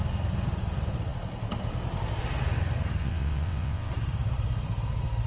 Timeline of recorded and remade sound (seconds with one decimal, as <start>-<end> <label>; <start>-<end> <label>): 0.0-3.0 recorded; 3.0-3.9 remade; 3.9-5.3 recorded